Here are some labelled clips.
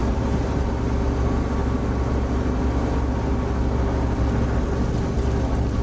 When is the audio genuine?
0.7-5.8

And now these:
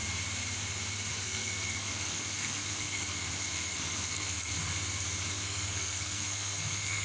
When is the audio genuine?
0.0-1.2; 4.5-5.3

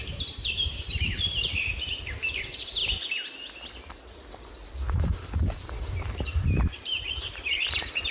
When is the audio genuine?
2.8-5.0

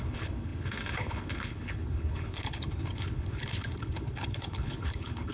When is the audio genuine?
none

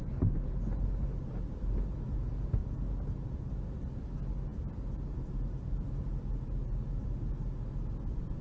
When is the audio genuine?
0.0-8.4

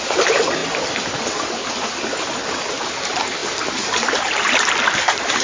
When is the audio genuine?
0.0-5.4

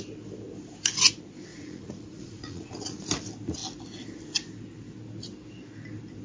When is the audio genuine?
0.0-1.5; 3.0-6.2

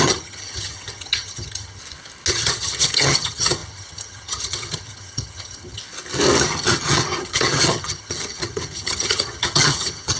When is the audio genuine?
1.8-2.3; 5.8-6.4